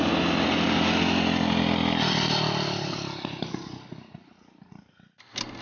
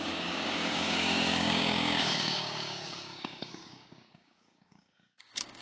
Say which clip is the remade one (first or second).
second